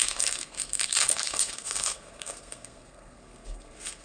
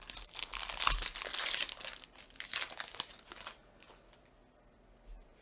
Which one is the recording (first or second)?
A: second